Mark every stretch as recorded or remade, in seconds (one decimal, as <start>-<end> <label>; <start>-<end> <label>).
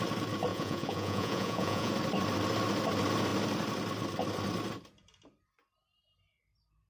0.0-0.5 recorded; 0.5-1.9 remade; 1.9-6.9 recorded